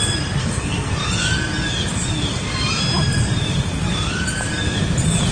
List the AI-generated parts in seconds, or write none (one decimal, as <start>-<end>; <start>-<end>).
0.4-0.9